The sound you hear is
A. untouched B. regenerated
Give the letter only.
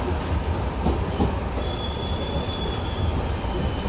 A